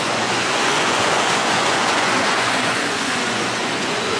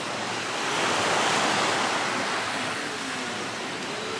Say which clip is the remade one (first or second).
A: first